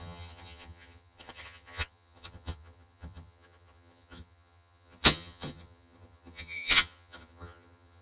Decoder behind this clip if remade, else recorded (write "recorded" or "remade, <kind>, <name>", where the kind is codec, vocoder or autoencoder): remade, vocoder, HiFi-GAN